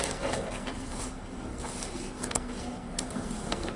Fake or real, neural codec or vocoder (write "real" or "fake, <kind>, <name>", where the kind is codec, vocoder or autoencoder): fake, codec, SNAC